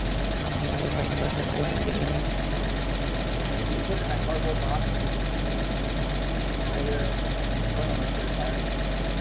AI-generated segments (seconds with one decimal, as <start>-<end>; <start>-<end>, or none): 0.4-2.2